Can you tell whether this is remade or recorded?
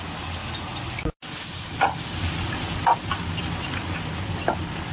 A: recorded